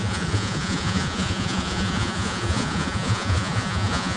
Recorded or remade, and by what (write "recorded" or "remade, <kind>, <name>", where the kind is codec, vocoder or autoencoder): remade, vocoder, Vocos